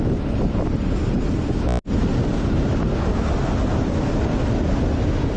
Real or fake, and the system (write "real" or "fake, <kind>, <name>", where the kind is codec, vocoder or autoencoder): real